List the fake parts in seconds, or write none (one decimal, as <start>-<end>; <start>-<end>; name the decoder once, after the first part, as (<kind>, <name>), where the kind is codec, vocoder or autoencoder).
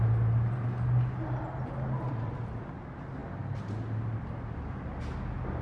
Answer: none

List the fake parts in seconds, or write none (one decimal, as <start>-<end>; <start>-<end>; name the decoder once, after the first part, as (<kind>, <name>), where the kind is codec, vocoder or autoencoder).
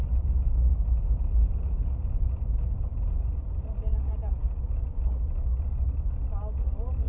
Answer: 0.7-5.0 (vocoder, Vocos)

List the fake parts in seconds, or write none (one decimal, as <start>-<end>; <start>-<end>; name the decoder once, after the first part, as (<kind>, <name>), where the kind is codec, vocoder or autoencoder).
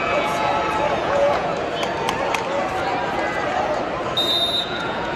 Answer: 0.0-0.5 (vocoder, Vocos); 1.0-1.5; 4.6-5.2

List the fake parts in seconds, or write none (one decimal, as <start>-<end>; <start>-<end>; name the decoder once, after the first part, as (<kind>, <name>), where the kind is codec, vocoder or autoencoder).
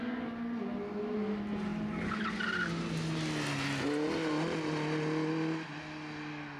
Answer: none